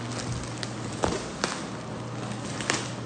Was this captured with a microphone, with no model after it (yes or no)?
yes